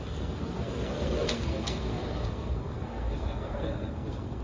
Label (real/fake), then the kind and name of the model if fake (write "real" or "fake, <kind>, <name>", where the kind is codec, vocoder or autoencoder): fake, codec, SNAC